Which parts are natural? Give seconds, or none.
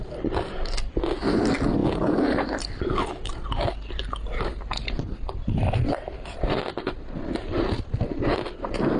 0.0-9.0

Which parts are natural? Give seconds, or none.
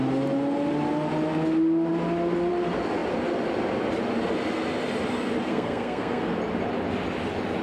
0.0-5.5; 6.2-7.6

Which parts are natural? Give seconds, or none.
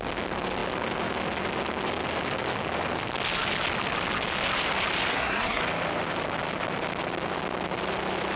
0.0-5.1; 5.6-8.4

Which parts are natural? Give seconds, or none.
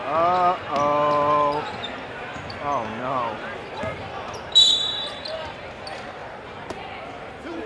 0.0-2.9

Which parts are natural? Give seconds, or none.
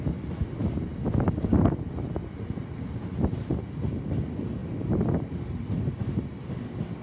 0.0-7.0